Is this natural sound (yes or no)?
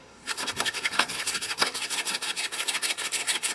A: no